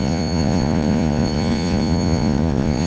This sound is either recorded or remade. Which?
remade